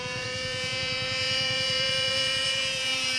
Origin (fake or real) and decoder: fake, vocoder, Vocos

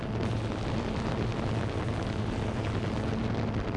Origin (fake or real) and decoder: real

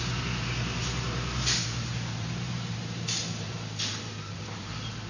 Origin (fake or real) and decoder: real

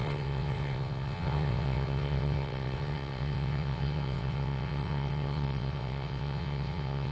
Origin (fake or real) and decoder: fake, vocoder, WaveNeXt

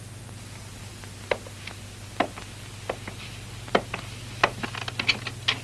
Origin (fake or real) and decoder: real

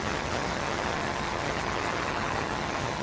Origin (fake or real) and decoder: fake, vocoder, HiFi-GAN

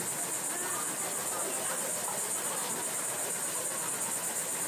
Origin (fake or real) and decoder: real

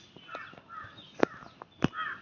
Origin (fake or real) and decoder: real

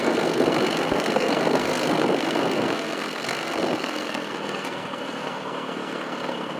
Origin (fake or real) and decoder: fake, codec, SNAC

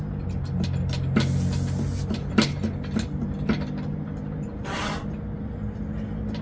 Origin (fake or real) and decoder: real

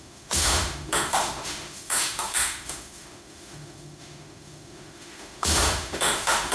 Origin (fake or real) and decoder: fake, autoencoder, DAC-VAE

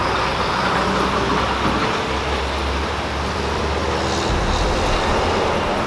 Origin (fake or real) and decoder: real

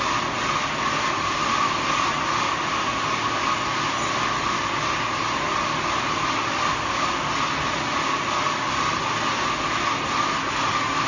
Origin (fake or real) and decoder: real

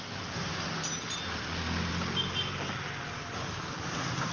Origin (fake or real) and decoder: real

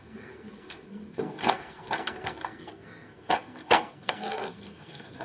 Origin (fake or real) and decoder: fake, codec, SNAC